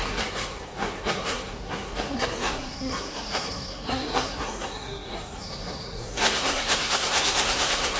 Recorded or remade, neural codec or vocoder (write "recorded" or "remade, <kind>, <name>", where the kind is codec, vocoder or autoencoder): remade, codec, SNAC